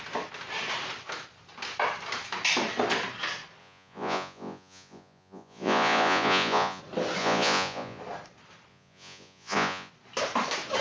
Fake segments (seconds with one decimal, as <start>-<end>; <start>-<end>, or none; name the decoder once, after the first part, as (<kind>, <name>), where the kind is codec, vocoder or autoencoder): 3.6-6.8 (vocoder, Vocos); 7.2-8.0; 8.7-9.9